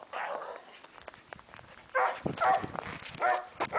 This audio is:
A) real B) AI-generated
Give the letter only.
A